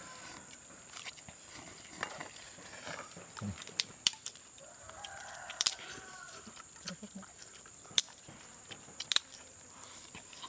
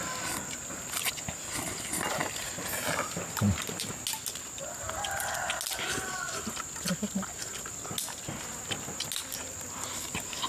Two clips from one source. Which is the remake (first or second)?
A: first